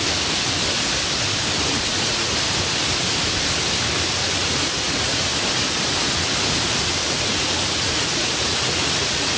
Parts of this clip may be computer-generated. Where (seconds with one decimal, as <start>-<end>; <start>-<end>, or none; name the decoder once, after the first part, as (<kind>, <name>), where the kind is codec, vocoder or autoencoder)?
1.7-2.3 (vocoder, Vocos); 4.2-5.3; 7.0-9.4